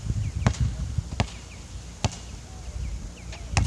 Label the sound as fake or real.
real